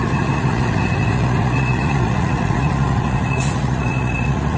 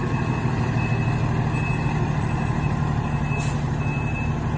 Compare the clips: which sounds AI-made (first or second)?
first